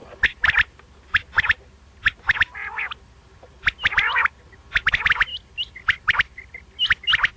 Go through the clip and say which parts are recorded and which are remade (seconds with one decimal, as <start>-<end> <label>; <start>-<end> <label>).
0.0-7.4 recorded